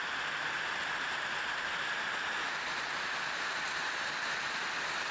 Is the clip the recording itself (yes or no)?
yes